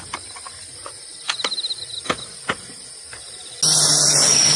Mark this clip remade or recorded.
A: recorded